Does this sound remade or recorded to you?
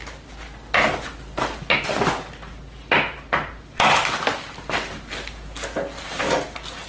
recorded